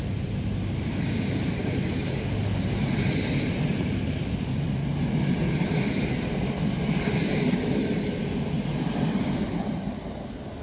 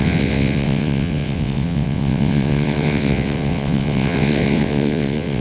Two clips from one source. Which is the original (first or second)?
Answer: first